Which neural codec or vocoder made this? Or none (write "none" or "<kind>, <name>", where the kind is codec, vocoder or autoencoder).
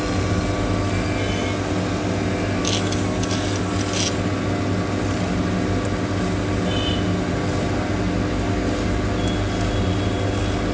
none